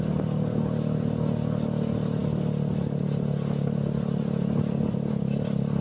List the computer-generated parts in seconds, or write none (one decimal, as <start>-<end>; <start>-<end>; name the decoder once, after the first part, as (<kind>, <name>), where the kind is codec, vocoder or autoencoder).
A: none